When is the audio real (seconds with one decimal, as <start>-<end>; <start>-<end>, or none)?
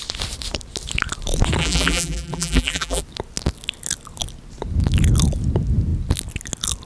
0.0-1.6; 3.0-6.9